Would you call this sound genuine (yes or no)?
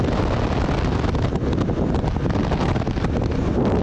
yes